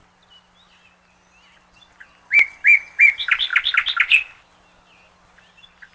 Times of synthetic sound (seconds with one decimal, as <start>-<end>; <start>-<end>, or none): 3.0-3.5